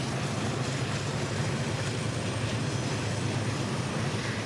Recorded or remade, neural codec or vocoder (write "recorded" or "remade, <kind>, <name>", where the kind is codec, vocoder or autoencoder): remade, vocoder, BigVGAN v2